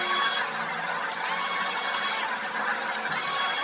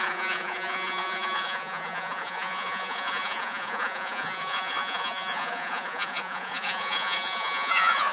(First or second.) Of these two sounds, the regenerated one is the second